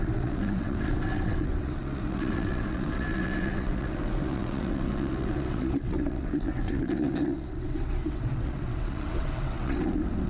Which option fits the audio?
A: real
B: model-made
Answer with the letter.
B